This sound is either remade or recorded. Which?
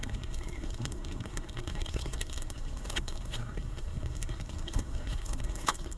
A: remade